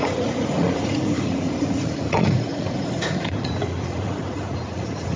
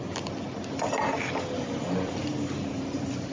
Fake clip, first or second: first